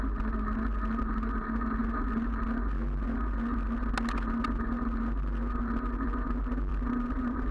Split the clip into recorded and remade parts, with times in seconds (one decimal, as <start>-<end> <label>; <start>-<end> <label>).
0.0-6.7 recorded; 6.7-7.5 remade